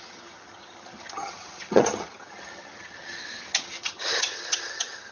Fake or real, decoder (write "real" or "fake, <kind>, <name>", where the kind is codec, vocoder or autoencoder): fake, vocoder, HiFi-GAN